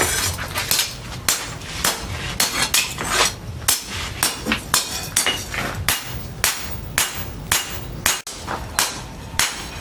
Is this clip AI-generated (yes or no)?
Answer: no